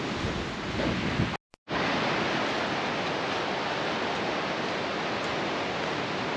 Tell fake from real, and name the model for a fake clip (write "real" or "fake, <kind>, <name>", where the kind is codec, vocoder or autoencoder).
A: real